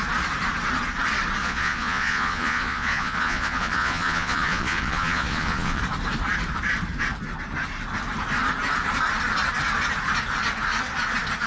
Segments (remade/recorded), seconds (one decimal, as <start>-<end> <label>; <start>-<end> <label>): 0.0-1.4 recorded; 1.4-5.8 remade; 5.8-11.5 recorded